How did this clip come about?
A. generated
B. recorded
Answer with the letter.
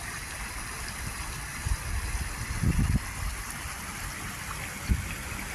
B